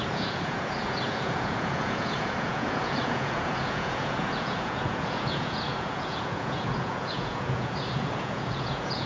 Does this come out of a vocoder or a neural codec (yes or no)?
yes